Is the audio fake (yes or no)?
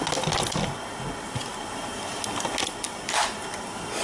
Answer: no